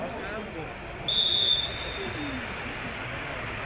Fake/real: real